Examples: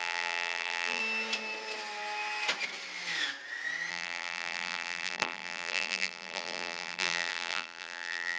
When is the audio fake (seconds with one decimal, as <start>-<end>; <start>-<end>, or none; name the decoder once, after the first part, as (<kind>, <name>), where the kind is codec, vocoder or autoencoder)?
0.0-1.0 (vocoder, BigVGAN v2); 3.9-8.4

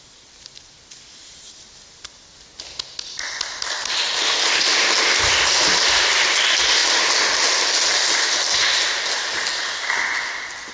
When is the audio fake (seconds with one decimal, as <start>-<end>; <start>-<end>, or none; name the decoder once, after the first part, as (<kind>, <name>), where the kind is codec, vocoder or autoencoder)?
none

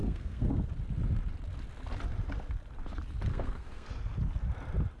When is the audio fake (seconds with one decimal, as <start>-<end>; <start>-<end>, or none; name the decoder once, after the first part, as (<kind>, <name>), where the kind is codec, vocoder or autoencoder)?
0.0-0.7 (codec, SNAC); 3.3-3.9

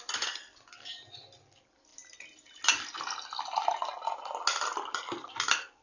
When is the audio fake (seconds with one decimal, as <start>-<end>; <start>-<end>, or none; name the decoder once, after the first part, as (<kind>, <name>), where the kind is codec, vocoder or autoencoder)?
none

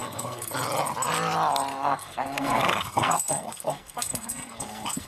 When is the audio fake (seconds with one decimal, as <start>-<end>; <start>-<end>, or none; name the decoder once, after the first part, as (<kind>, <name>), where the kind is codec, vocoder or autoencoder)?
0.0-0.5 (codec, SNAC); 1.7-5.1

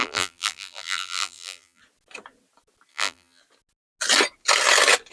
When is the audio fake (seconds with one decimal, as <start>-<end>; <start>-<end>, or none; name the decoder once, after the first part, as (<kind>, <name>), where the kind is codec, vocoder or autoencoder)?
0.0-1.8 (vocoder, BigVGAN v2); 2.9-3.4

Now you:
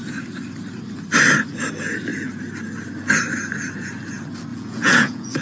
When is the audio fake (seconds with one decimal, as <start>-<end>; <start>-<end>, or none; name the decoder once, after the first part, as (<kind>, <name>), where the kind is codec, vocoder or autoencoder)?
4.5-5.4 (vocoder, Vocos)